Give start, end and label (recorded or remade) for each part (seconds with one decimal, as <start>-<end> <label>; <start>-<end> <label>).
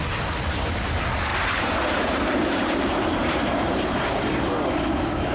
0.0-1.3 recorded; 1.3-4.5 remade; 4.5-5.3 recorded